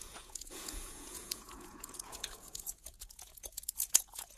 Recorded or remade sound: remade